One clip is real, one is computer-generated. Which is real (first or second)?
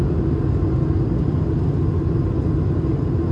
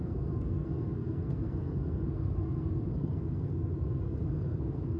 first